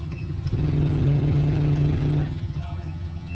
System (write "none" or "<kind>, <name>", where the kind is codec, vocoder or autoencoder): vocoder, HiFi-GAN